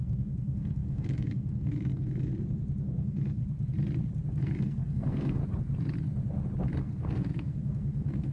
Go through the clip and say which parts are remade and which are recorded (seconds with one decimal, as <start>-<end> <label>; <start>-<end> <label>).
0.0-2.3 remade; 2.3-2.8 recorded; 2.8-3.4 remade; 3.4-4.3 recorded; 4.3-5.4 remade; 5.4-6.8 recorded; 6.8-8.3 remade